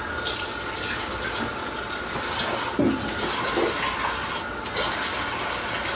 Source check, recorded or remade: recorded